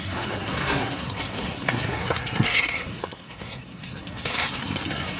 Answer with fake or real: fake